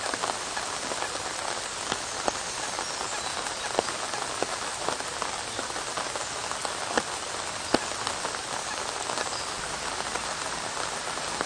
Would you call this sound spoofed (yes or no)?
no